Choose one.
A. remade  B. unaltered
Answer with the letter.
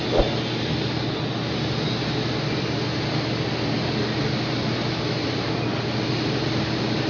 B